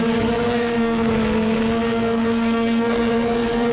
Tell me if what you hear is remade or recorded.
remade